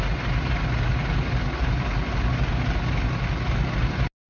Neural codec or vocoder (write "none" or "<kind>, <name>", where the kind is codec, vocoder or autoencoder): none